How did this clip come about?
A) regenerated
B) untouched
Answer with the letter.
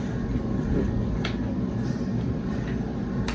B